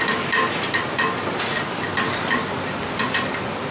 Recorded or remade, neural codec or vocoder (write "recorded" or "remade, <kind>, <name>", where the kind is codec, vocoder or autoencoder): remade, vocoder, BigVGAN v2